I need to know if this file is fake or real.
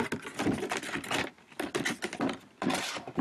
real